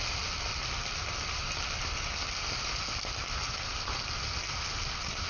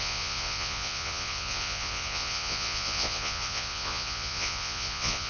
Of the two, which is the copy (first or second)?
second